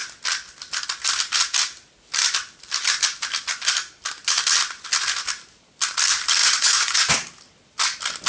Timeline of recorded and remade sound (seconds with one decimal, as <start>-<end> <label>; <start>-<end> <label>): 0.0-6.4 recorded; 6.4-7.1 remade; 7.1-8.3 recorded